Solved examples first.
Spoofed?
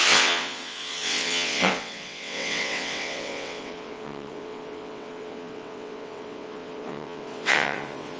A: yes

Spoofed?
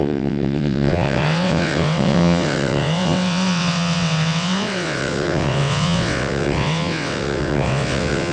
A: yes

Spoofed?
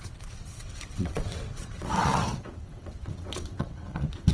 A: yes